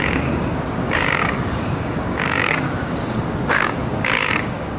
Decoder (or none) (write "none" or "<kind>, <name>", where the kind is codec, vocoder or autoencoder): codec, DAC